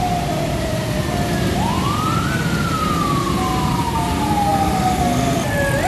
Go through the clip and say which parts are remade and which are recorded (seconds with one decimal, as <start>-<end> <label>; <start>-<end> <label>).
0.0-5.9 remade